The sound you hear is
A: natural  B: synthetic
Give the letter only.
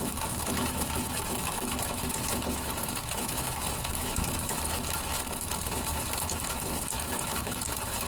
B